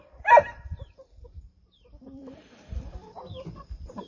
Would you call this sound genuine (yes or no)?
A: no